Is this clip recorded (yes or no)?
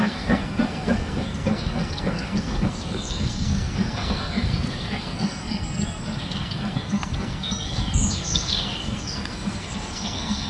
no